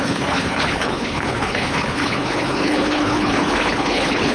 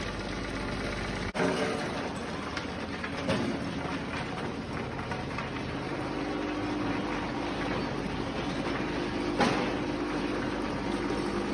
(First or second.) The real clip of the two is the second